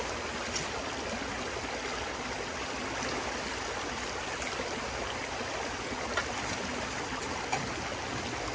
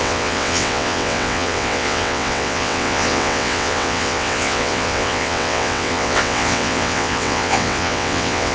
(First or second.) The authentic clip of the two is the first